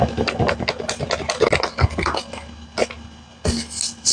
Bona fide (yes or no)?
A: yes